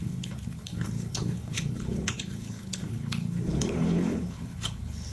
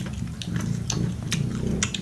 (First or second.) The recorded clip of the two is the second